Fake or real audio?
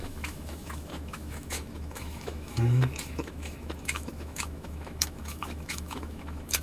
fake